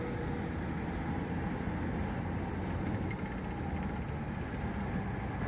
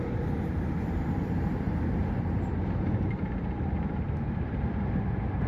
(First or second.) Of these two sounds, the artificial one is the second